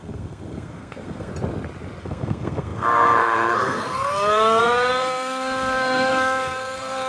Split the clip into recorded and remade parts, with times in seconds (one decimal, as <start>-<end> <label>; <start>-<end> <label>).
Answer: 0.0-1.3 remade; 1.3-2.0 recorded; 2.0-7.1 remade